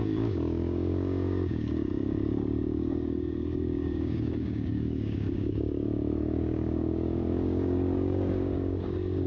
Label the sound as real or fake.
fake